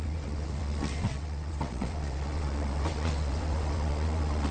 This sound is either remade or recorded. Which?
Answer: remade